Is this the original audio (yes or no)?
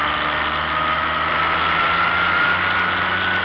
yes